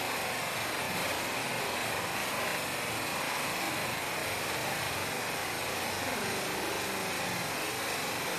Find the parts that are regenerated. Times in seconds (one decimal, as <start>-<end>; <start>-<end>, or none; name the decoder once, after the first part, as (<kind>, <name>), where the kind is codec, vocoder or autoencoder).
none